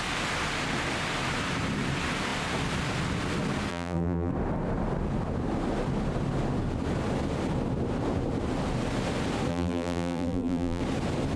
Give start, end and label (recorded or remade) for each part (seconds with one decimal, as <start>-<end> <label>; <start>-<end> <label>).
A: 0.0-3.7 recorded; 3.7-4.3 remade; 4.3-9.5 recorded; 9.5-10.8 remade; 10.8-11.4 recorded